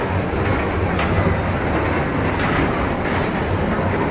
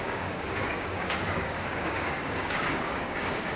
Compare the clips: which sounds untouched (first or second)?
first